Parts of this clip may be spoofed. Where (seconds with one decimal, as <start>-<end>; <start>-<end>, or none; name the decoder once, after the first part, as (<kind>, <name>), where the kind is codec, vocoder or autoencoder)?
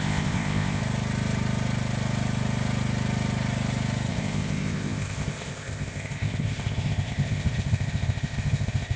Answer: 0.0-0.8 (codec, ZipCodec); 4.1-9.0